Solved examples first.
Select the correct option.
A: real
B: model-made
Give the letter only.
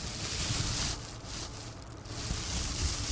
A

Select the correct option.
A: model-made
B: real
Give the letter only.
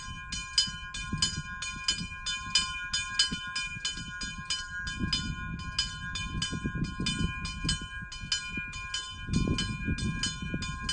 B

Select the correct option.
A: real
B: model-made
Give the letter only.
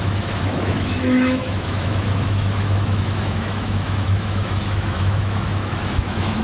B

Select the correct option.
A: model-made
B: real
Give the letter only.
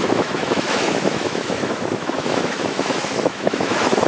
A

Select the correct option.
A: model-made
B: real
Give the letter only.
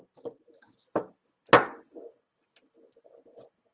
B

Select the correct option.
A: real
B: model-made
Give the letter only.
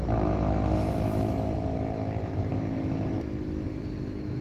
B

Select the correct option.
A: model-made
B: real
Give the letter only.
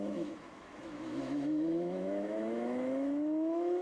A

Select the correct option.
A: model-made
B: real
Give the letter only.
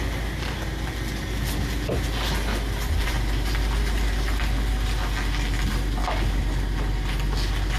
B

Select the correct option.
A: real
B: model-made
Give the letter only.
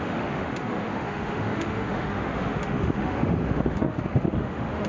B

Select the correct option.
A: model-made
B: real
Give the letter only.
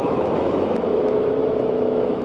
A